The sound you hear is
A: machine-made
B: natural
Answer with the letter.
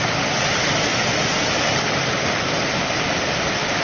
B